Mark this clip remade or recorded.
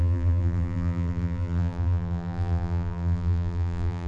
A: remade